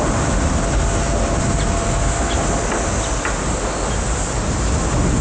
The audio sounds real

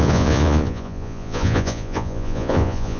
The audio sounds fake